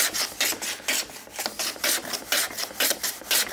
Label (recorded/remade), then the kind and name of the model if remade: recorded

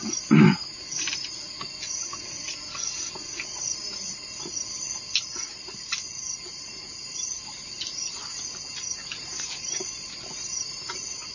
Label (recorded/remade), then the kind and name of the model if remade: recorded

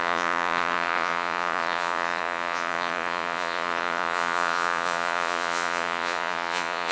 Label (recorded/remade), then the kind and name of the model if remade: remade, vocoder, Vocos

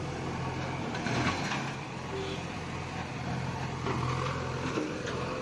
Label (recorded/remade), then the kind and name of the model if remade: recorded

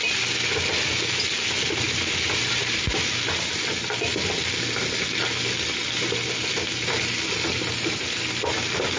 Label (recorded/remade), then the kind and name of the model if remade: recorded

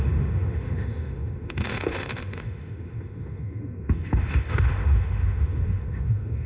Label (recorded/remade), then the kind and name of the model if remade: remade, autoencoder, DAC-VAE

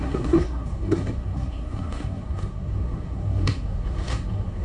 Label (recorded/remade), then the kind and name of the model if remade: remade, codec, SNAC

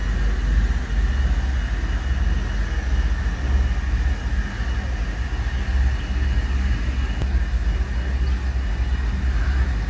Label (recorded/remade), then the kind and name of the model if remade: recorded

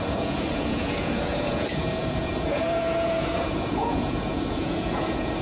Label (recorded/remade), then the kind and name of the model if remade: remade, vocoder, Vocos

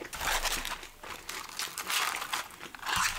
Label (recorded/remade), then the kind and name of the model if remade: recorded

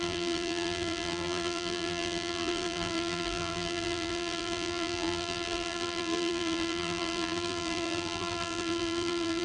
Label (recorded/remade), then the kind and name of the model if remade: remade, vocoder, BigVGAN v2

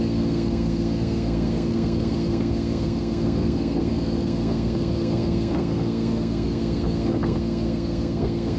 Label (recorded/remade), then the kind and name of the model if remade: remade, codec, SNAC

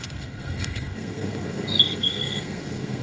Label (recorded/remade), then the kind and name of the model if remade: remade, codec, SNAC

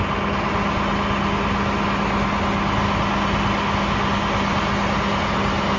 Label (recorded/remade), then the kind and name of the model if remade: recorded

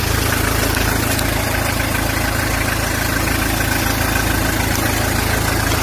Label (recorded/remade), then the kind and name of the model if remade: recorded